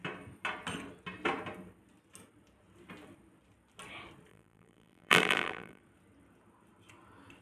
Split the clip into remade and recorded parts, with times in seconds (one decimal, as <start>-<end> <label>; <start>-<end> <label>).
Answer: 0.0-4.3 recorded; 4.3-5.8 remade; 5.8-7.4 recorded